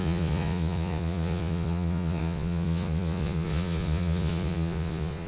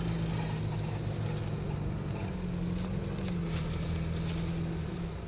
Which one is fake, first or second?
first